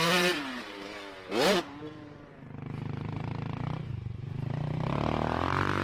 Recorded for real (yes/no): no